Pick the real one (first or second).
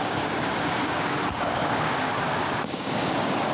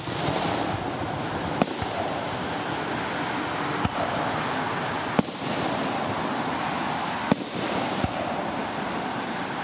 second